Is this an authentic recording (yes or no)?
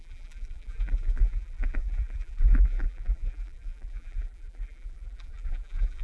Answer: no